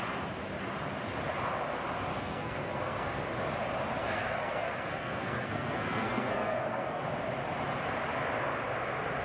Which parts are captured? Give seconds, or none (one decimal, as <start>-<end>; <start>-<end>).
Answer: 0.0-2.1; 3.2-4.0; 7.0-9.2